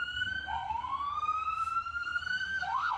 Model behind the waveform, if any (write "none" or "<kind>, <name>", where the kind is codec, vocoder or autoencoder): codec, SNAC